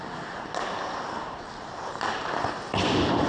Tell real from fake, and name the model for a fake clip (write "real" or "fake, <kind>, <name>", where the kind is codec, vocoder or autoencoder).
real